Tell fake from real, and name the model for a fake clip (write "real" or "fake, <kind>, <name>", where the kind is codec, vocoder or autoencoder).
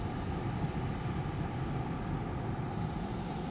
real